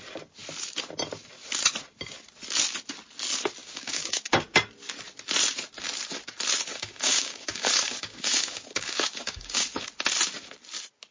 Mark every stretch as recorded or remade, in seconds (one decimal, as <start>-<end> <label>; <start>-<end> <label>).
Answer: 0.0-3.6 recorded; 3.6-4.3 remade; 4.3-6.7 recorded; 6.7-9.9 remade; 9.9-11.1 recorded